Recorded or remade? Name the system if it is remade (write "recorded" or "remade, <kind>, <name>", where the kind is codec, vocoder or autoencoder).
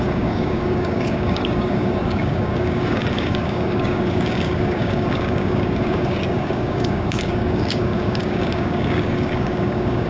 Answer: remade, codec, DAC